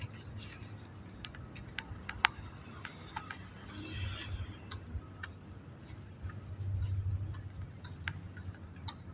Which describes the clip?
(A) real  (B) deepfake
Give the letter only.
A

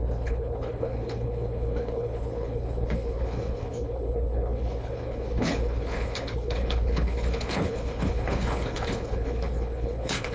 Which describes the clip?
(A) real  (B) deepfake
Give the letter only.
B